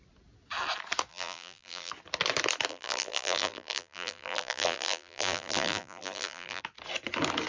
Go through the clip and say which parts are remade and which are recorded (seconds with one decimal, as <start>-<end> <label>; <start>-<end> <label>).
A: 0.0-1.1 recorded; 1.1-1.9 remade; 1.9-2.7 recorded; 2.7-6.6 remade; 6.6-7.5 recorded